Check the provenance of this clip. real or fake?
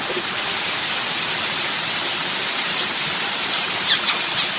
fake